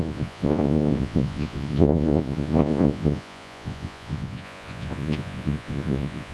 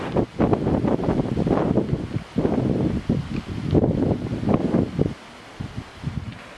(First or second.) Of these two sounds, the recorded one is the second